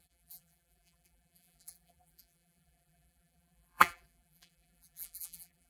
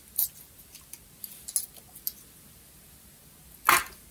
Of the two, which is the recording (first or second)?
second